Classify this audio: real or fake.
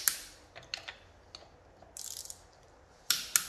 real